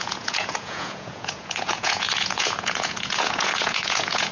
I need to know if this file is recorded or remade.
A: remade